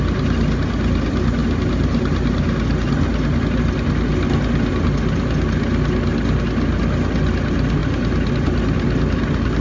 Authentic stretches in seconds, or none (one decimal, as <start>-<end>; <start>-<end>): 0.0-9.6